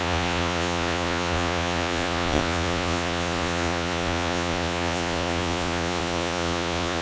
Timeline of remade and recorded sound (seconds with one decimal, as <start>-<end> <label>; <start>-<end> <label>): 0.0-7.0 remade